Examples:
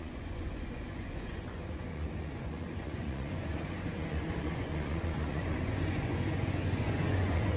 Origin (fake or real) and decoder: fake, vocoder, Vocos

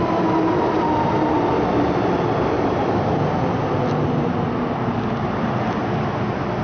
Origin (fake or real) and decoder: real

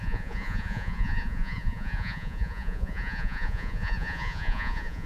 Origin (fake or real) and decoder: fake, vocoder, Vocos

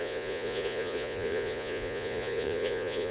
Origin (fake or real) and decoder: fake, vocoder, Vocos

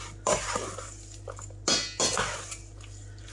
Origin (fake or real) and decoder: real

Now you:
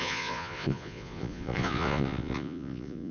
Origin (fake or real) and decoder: fake, vocoder, Vocos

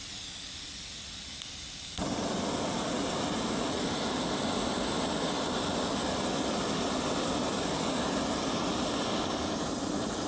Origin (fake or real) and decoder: real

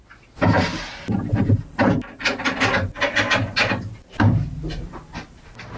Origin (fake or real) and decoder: real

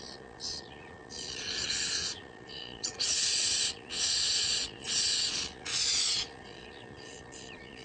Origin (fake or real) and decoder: fake, vocoder, Vocos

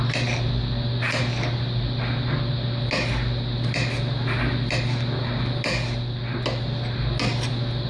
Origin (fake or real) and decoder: real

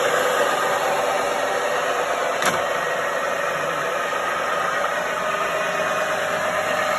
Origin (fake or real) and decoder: real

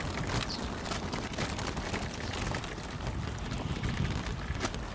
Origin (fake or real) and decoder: real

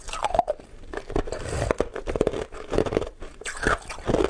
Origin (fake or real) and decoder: real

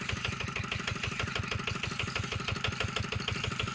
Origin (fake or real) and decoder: real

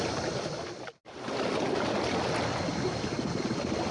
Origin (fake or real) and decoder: real